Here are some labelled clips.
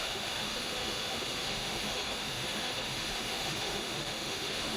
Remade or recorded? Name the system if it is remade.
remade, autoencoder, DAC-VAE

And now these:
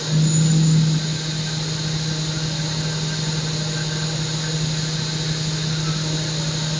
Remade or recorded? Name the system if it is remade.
recorded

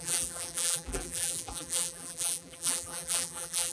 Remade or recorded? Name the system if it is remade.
remade, vocoder, BigVGAN v2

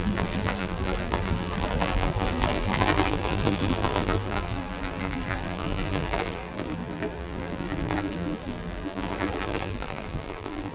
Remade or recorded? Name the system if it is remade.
remade, vocoder, BigVGAN v2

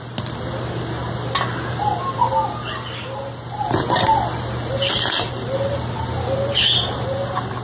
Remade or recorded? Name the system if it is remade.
recorded